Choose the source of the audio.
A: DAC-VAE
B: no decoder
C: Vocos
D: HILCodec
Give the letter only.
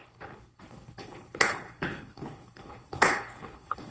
D